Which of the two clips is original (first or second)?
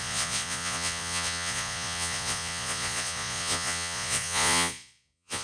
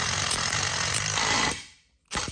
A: second